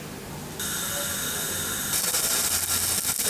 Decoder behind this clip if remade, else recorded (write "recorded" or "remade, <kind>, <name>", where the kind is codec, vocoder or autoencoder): recorded